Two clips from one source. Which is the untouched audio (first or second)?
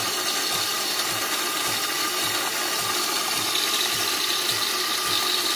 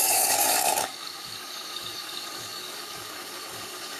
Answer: first